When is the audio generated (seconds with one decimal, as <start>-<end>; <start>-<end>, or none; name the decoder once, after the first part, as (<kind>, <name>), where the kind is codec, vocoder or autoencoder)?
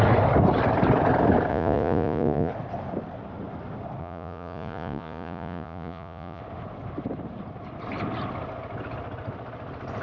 1.5-2.5 (vocoder, Vocos); 4.0-6.4